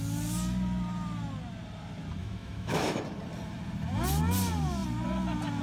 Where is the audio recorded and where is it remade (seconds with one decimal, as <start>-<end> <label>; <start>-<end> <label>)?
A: 0.0-2.2 recorded; 2.2-3.0 remade; 3.0-5.6 recorded